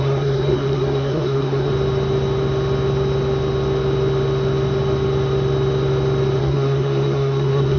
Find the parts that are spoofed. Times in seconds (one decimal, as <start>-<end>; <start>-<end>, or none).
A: 0.0-1.7; 6.4-7.8